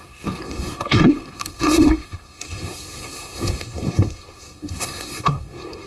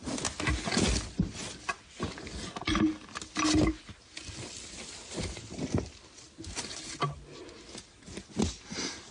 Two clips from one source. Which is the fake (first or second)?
first